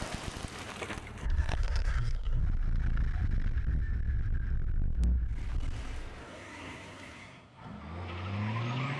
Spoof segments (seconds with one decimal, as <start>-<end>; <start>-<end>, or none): 1.2-2.4; 6.2-7.8